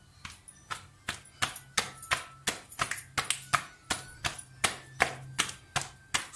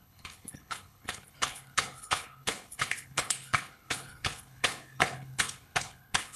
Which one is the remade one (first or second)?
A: second